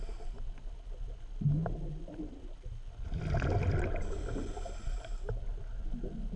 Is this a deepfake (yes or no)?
no